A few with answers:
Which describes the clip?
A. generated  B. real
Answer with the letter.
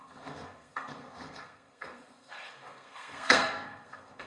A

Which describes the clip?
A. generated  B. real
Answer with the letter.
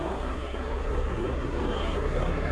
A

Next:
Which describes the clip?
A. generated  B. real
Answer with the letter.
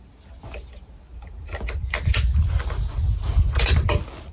B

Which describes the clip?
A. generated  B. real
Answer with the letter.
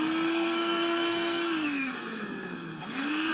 A